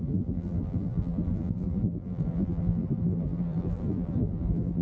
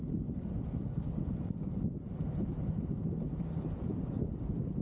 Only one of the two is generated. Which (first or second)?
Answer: first